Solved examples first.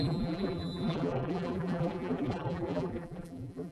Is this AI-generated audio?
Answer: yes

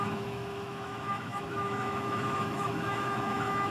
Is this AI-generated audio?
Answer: yes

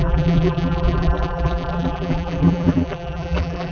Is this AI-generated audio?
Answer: yes